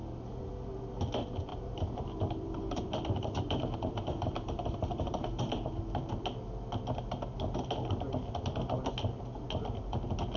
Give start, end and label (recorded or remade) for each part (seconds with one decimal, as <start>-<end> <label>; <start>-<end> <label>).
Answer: 0.0-1.5 recorded; 1.5-5.8 remade; 5.8-10.4 recorded